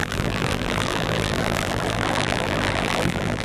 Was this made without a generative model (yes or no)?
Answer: no